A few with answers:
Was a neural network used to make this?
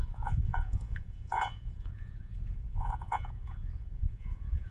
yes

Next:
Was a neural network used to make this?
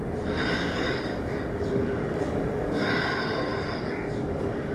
yes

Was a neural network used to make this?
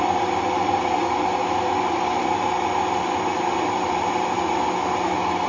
no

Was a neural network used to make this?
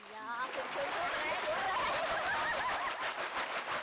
no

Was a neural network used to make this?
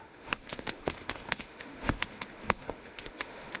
yes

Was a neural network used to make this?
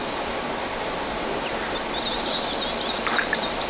no